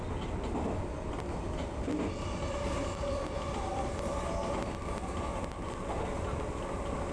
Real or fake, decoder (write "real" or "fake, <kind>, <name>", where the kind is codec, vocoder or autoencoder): real